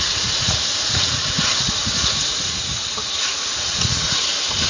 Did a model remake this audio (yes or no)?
yes